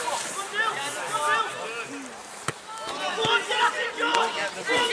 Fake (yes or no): no